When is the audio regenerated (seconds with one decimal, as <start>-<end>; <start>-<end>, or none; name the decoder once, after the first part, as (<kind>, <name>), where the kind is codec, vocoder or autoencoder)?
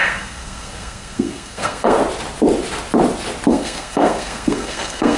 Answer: 0.0-2.0 (codec, SNAC); 3.5-5.2